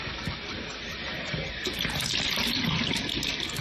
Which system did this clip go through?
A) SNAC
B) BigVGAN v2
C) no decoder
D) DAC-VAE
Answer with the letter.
C